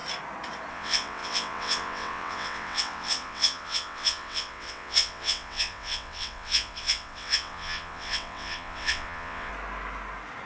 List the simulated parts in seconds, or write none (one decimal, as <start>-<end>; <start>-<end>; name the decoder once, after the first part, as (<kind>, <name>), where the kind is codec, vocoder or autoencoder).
0.7-9.5 (vocoder, WaveNeXt)